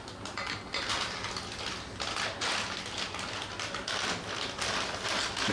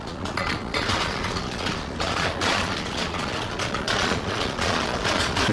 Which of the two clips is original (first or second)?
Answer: first